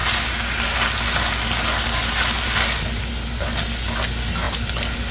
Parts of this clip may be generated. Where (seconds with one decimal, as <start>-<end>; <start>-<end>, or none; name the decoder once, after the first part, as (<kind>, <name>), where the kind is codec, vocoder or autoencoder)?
none